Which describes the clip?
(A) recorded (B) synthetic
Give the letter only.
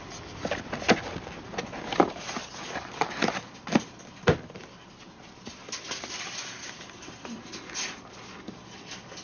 A